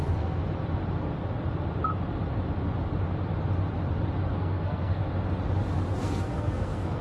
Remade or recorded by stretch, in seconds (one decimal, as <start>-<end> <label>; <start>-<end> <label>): 0.0-0.4 remade; 0.4-4.3 recorded; 4.3-5.0 remade; 5.0-6.0 recorded; 6.0-7.0 remade